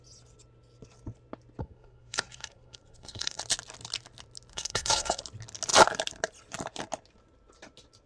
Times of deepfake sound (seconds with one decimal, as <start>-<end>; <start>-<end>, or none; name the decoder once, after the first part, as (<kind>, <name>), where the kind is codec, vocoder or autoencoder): 1.6-3.4 (codec, SNAC); 4.5-5.2

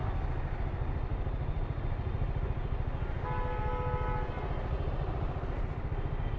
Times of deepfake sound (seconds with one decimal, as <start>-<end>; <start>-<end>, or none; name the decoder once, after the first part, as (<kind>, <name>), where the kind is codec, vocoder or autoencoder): none

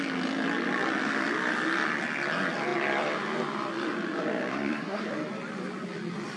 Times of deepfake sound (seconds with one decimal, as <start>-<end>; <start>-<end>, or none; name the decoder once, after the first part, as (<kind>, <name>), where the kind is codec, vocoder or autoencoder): 4.5-5.1 (codec, SNAC)

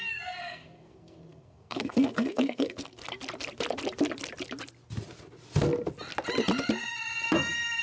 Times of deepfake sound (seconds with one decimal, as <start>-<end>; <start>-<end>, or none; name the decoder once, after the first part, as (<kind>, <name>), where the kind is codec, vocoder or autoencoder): 0.0-3.0 (codec, SNAC)

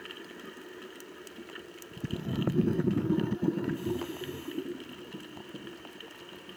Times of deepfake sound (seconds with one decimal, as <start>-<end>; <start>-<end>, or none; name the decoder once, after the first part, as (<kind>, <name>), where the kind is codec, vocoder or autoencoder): 2.2-3.7 (codec, SNAC)